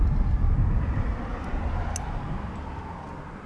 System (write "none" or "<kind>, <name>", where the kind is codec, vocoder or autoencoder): none